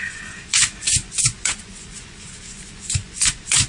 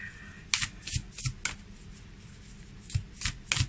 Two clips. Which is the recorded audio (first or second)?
second